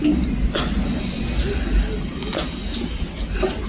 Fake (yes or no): no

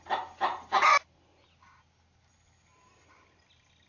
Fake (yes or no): no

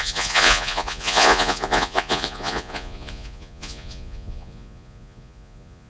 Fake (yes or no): yes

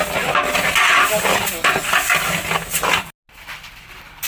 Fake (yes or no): no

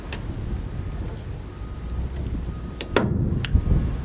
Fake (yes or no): no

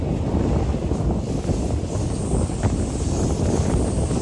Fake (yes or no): no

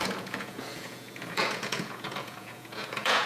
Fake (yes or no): yes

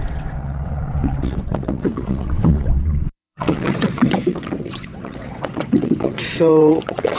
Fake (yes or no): yes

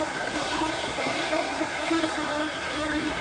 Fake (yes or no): yes